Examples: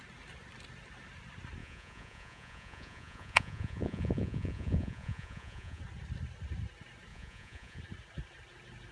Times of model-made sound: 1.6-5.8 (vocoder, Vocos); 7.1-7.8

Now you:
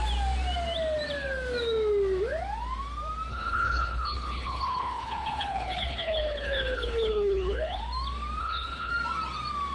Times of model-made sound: 3.3-7.8 (codec, HILCodec); 8.4-8.9

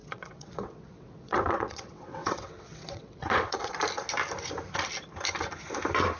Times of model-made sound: 0.0-3.7 (vocoder, WaveNeXt)

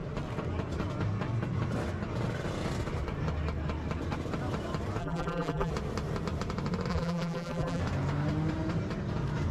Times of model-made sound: 5.0-5.7 (vocoder, BigVGAN v2); 6.9-7.8

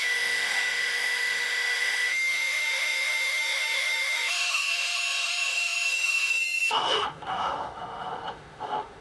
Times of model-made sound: 0.0-9.0 (autoencoder, DAC-VAE)

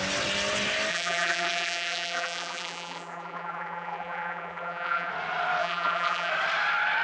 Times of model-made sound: 0.9-5.1 (vocoder, BigVGAN v2); 5.6-6.3

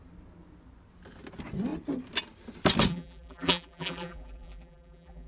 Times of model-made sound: 2.9-5.3 (vocoder, BigVGAN v2)

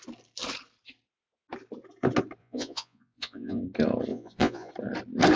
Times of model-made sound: 2.4-3.6 (vocoder, Vocos); 4.1-4.7